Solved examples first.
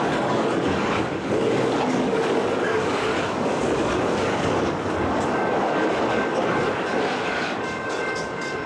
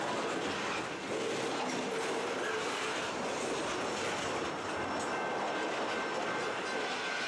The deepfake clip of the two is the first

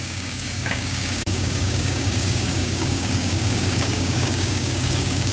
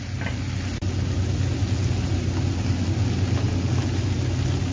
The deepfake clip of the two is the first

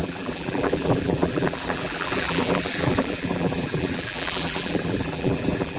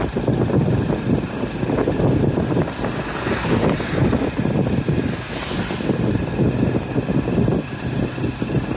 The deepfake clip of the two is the first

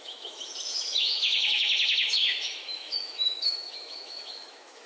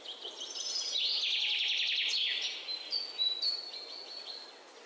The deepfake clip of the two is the first